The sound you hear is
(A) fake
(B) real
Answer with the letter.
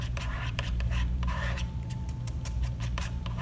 A